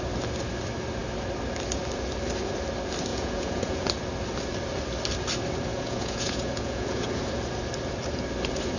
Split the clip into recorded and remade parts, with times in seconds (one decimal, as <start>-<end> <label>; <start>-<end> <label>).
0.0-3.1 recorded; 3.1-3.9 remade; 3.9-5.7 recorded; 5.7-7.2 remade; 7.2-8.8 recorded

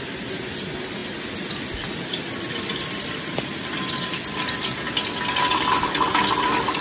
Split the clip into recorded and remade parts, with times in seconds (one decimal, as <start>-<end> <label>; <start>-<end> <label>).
0.0-6.8 recorded

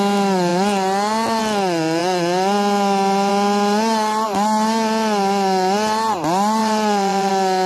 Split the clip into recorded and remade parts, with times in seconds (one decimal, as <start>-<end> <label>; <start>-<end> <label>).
0.0-6.6 recorded; 6.6-7.3 remade; 7.3-7.7 recorded

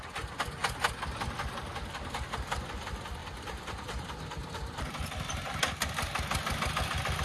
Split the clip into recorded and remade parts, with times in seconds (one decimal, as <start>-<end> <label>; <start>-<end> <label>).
0.0-7.2 recorded

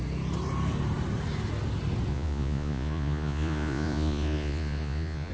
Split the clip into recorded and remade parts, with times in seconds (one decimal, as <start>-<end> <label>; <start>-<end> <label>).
0.0-2.1 recorded; 2.1-5.3 remade